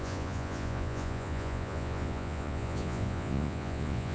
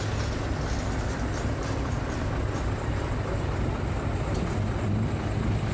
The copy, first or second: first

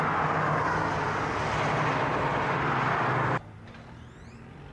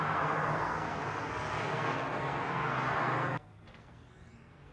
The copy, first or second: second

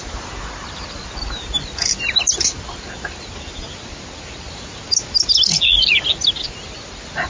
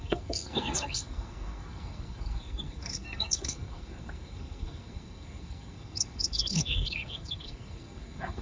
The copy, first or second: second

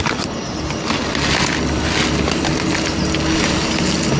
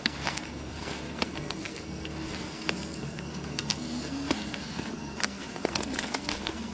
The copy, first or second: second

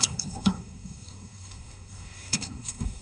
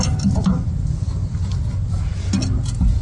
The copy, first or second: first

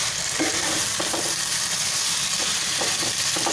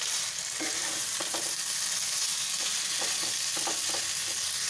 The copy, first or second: first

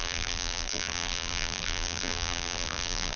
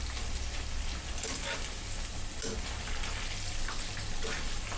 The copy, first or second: first